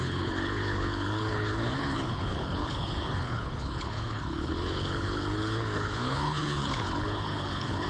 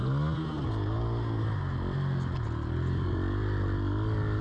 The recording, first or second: second